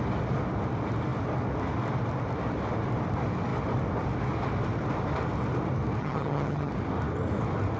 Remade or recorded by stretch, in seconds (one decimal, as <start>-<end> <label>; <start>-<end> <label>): 0.0-6.0 recorded; 6.0-6.7 remade; 6.7-7.8 recorded